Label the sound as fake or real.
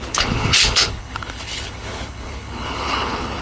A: fake